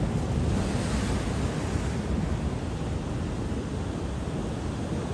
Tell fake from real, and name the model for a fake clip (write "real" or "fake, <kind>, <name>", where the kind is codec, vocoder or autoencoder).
real